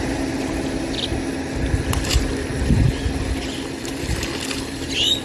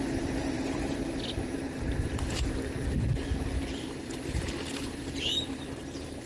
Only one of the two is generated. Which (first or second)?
second